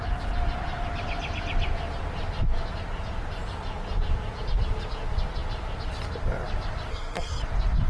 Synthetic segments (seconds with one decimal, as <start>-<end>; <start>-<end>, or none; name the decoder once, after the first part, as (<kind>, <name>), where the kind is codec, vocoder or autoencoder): 6.9-7.4 (codec, SNAC)